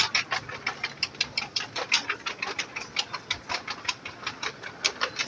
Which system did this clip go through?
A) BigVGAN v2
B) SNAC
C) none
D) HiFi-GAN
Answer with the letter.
C